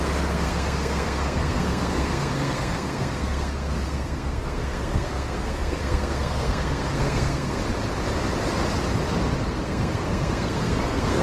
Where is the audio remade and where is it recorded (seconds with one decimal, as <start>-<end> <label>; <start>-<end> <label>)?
0.0-7.6 remade; 7.6-9.5 recorded; 9.5-11.2 remade

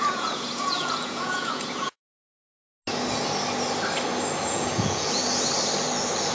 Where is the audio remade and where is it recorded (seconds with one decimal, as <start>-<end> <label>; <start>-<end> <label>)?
0.0-2.0 remade; 2.0-4.5 recorded; 4.5-5.2 remade; 5.2-6.3 recorded

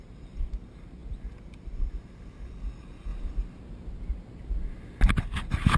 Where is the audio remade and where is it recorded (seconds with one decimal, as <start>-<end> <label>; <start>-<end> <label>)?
0.0-5.8 recorded

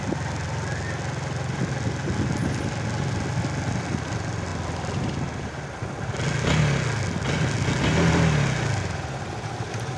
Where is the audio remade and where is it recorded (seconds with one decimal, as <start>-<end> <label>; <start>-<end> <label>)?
0.0-10.0 recorded

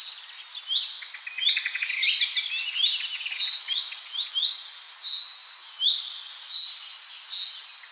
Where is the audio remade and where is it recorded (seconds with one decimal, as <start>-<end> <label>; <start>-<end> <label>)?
0.0-7.9 recorded

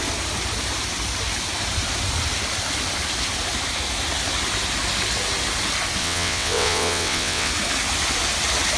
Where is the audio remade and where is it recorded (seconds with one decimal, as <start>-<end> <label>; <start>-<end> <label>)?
0.0-6.0 recorded; 6.0-7.5 remade; 7.5-8.8 recorded

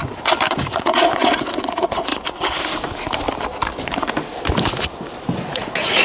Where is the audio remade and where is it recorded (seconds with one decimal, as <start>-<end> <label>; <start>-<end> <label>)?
0.0-0.7 recorded; 0.7-2.1 remade; 2.1-5.5 recorded; 5.5-6.0 remade

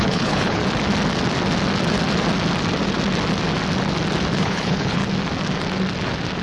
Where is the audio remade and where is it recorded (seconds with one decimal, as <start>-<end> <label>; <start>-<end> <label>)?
0.0-0.6 remade; 0.6-4.4 recorded; 4.4-5.0 remade; 5.0-6.4 recorded